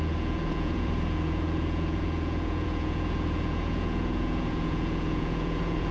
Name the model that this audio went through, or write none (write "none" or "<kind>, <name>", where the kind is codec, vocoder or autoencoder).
vocoder, Vocos